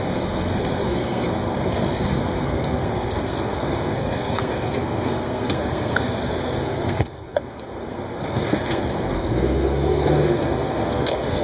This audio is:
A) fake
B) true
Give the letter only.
A